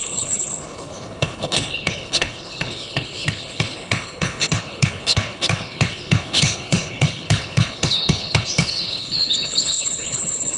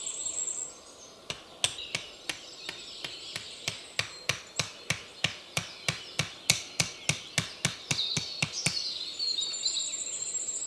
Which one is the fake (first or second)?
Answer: first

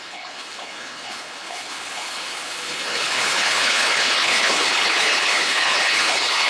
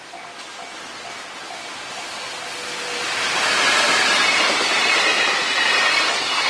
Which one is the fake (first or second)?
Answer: first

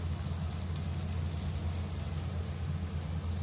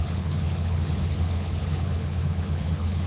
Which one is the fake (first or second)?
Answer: second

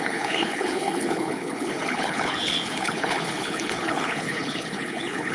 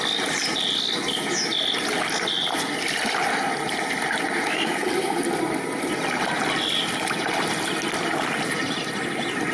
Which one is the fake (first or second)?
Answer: first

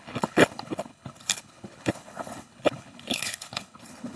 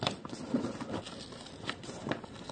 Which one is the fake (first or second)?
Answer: first